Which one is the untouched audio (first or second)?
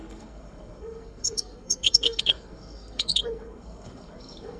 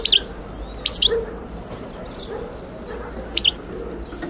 second